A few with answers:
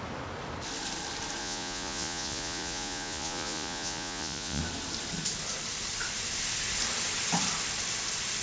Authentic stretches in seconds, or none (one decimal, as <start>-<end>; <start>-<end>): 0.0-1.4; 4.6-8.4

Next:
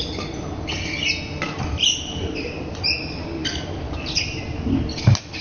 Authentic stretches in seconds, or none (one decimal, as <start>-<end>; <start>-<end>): 0.0-5.4

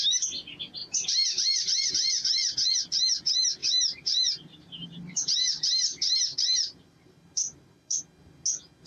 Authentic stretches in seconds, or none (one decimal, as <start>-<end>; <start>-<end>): 0.0-0.8; 1.9-3.6; 8.0-8.9